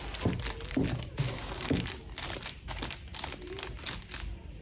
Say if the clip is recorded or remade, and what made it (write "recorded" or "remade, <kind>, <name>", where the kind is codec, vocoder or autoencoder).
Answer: recorded